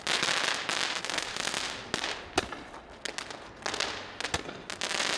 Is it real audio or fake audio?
real